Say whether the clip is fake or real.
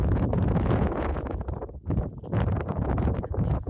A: fake